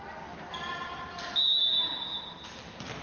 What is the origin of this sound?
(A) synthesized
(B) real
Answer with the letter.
B